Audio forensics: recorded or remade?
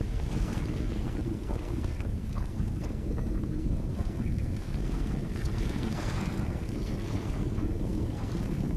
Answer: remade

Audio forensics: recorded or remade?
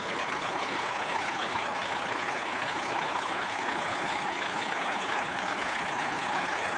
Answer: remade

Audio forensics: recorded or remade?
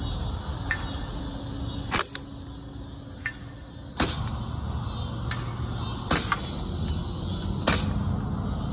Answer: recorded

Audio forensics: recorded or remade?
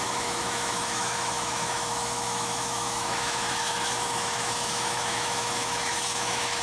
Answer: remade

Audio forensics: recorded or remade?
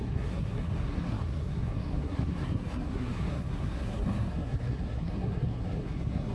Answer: remade